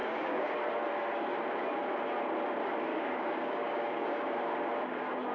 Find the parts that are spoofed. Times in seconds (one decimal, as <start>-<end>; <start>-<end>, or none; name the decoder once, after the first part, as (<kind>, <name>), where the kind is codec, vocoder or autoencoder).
0.0-0.5 (codec, DAC); 2.9-4.4